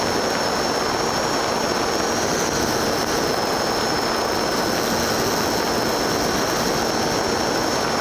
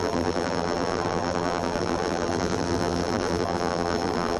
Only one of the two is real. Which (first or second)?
first